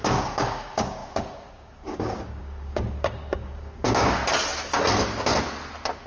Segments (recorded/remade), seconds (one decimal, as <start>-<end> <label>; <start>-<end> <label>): 0.0-4.2 remade; 4.2-6.1 recorded

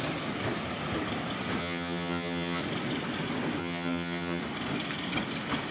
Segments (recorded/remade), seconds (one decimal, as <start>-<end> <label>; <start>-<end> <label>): 0.0-1.6 recorded; 1.6-2.6 remade; 2.6-3.6 recorded; 3.6-4.4 remade; 4.4-5.7 recorded

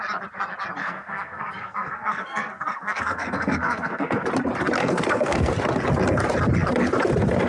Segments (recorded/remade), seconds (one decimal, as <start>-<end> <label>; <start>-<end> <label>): 0.0-0.8 recorded; 0.8-4.3 remade; 4.3-4.8 recorded; 4.8-5.5 remade; 5.5-7.5 recorded

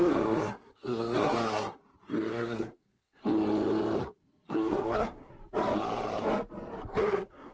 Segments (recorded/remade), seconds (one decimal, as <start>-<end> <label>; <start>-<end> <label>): 0.0-1.8 remade; 1.8-2.3 recorded; 2.3-3.2 remade; 3.2-4.5 recorded; 4.5-5.3 remade; 5.3-7.0 recorded; 7.0-7.5 remade

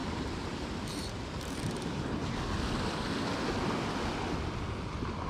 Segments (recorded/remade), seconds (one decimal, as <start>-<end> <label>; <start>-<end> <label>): 0.0-1.6 remade; 1.6-5.3 recorded

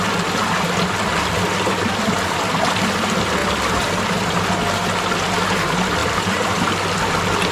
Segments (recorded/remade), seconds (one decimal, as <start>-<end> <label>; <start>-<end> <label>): 0.0-3.4 recorded; 3.4-4.5 remade; 4.5-6.0 recorded; 6.0-6.7 remade; 6.7-7.5 recorded